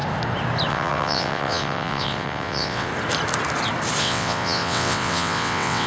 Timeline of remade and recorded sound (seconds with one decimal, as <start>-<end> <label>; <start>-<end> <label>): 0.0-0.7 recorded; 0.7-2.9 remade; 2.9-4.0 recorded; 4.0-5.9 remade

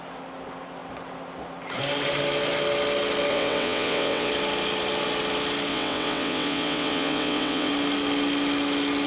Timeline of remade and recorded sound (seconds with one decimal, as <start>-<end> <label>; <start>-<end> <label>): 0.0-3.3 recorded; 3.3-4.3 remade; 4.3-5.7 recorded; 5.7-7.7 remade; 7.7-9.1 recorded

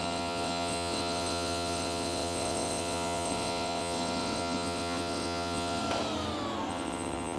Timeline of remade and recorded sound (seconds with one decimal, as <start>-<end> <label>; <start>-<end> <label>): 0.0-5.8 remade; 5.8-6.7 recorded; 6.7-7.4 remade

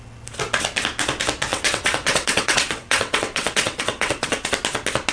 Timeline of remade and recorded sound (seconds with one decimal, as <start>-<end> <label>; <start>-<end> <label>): 0.0-1.5 recorded; 1.5-4.5 remade; 4.5-5.1 recorded

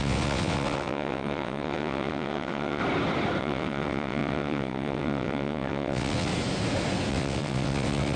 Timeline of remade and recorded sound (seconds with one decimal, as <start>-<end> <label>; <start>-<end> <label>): 0.0-2.8 remade; 2.8-3.4 recorded; 3.4-6.3 remade; 6.3-7.1 recorded; 7.1-8.2 remade